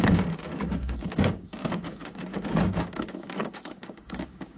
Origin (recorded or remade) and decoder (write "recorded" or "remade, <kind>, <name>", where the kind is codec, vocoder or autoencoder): remade, codec, DAC